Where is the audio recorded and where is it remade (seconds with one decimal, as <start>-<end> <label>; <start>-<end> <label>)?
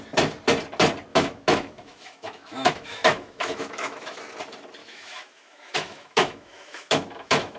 0.0-1.1 recorded; 1.1-4.2 remade; 4.2-4.8 recorded; 4.8-7.6 remade